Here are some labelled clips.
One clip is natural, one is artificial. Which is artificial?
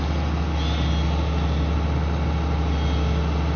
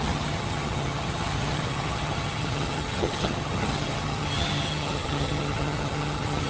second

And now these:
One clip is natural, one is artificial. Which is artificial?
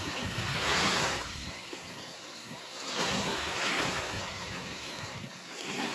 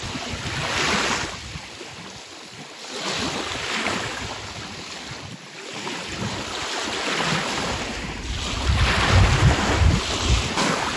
first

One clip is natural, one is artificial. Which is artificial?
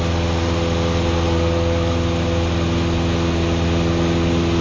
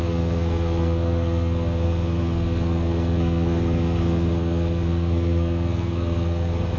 second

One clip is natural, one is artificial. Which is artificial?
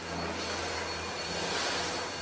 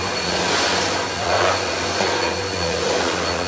second